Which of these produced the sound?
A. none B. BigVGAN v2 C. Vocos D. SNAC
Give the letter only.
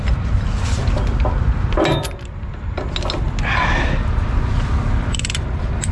A